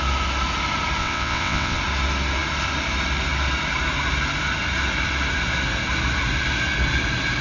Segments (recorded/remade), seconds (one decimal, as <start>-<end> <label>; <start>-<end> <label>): 0.0-1.0 recorded; 1.0-1.8 remade; 1.8-7.4 recorded